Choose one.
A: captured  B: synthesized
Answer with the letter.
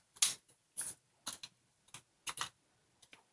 A